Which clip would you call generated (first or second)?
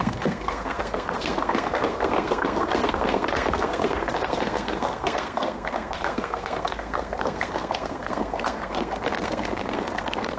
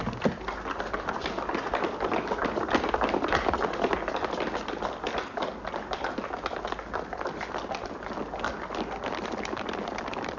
first